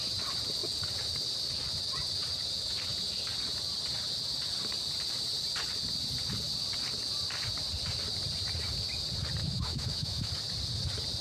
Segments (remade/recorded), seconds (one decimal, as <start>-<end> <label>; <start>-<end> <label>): 0.0-9.4 recorded; 9.4-10.3 remade; 10.3-11.2 recorded